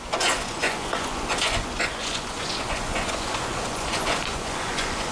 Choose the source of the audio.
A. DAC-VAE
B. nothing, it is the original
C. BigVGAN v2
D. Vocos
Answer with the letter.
D